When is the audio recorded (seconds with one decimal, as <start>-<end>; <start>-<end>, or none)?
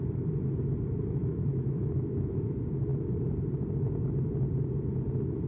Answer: 0.0-1.2; 2.3-5.5